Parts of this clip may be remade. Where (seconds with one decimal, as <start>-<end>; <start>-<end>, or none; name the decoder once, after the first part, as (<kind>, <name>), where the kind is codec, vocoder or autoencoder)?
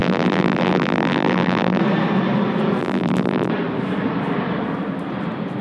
0.0-1.8 (vocoder, BigVGAN v2); 2.8-3.5